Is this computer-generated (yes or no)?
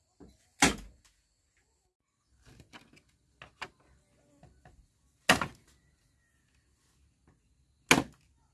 no